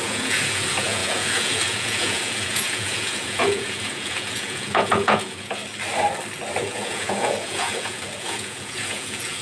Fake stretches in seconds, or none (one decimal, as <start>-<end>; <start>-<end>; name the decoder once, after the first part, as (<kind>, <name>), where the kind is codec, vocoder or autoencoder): 0.0-5.6 (vocoder, Vocos); 6.6-9.4

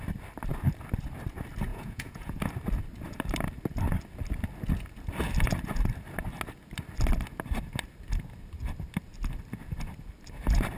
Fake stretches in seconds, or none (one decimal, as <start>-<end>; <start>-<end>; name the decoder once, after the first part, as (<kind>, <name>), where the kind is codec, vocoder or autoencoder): 1.7-2.4 (vocoder, Vocos)

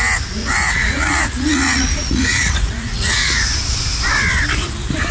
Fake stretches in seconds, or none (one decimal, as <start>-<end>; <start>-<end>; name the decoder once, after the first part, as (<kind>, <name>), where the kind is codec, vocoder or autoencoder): 0.4-3.5 (vocoder, Vocos)

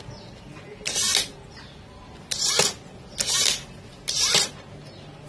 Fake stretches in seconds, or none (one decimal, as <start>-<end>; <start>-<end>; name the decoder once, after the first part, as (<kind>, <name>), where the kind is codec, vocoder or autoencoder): none

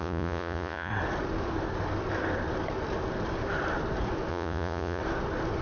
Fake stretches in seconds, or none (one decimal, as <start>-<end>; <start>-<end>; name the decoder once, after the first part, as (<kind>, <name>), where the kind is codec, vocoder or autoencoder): 0.0-0.9 (vocoder, Vocos); 4.3-5.0

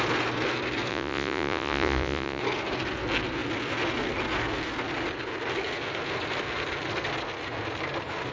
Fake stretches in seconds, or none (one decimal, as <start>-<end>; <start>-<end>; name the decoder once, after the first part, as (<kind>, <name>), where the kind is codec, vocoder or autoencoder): 0.9-2.4 (vocoder, Vocos)

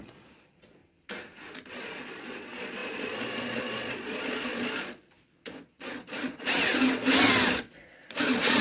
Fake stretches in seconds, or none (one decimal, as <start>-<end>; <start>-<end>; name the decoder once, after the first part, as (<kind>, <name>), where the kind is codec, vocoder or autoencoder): 0.0-0.8 (vocoder, Vocos); 1.7-6.7; 7.6-8.6